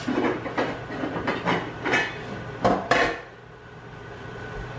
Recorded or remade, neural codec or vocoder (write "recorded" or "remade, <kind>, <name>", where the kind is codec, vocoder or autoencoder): recorded